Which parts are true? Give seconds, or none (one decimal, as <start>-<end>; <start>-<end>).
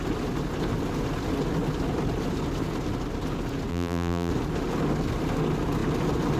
0.0-3.7; 4.3-6.4